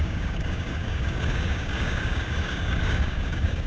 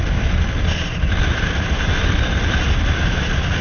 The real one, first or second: second